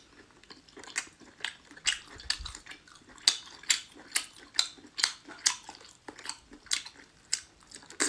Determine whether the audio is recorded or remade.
recorded